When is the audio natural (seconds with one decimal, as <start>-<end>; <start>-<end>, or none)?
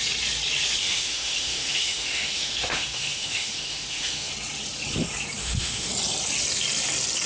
0.0-0.8; 4.3-5.4; 5.9-7.3